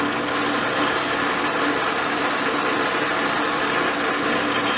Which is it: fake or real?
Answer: real